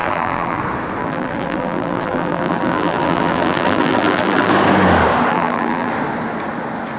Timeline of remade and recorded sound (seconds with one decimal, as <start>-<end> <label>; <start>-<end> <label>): 0.0-0.6 remade; 0.6-1.0 recorded; 1.0-4.5 remade; 4.5-5.3 recorded; 5.3-5.9 remade; 5.9-7.0 recorded